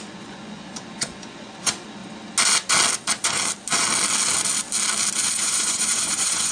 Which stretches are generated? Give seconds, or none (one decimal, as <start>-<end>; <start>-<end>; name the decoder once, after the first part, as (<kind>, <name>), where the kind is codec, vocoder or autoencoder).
0.0-2.0 (vocoder, Vocos); 5.3-6.5